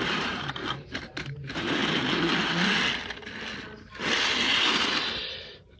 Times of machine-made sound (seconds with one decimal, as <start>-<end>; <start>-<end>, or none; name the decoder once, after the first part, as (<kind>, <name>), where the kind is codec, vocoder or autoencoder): 0.0-1.8 (vocoder, BigVGAN v2); 5.3-5.8